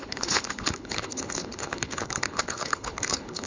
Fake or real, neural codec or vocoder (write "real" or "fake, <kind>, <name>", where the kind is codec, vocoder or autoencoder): fake, codec, HILCodec